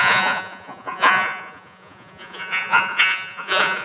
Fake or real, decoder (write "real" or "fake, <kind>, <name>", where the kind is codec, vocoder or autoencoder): fake, vocoder, Vocos